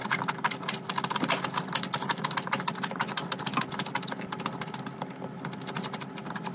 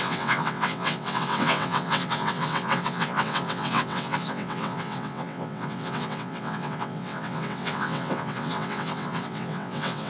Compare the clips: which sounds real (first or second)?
first